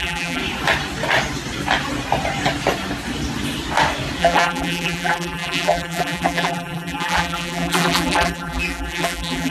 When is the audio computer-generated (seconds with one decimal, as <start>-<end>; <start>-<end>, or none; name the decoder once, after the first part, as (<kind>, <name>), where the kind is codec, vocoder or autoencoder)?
0.0-0.4 (vocoder, BigVGAN v2); 4.2-9.5